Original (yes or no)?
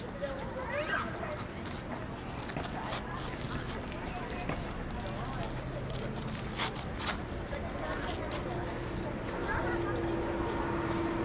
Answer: yes